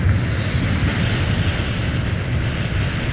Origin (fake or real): fake